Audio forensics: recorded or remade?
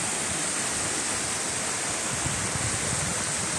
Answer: recorded